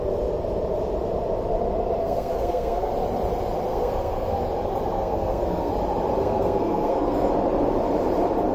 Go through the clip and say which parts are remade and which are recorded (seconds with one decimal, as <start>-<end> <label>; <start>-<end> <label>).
0.0-2.0 recorded; 2.0-2.9 remade; 2.9-3.7 recorded; 3.7-4.4 remade; 4.4-4.9 recorded; 4.9-5.7 remade; 5.7-6.2 recorded; 6.2-7.3 remade; 7.3-8.5 recorded